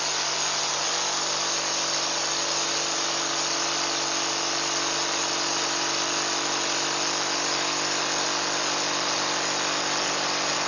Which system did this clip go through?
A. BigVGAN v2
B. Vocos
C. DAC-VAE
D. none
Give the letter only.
D